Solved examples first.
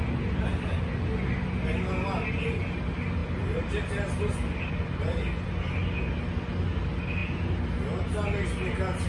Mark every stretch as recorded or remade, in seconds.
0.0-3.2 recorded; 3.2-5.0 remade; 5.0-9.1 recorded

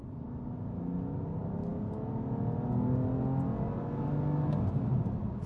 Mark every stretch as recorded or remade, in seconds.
0.0-5.5 recorded